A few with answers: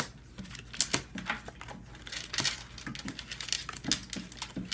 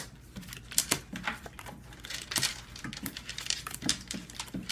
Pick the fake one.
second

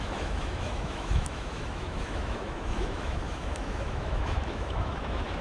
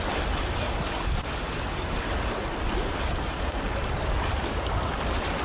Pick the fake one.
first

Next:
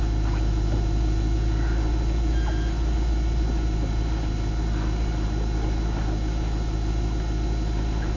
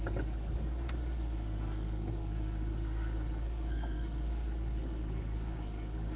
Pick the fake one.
second